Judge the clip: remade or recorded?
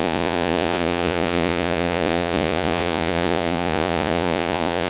remade